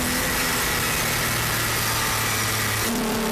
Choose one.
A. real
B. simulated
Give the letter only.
A